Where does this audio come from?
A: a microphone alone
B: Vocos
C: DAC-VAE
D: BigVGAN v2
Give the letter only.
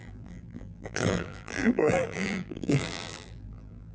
D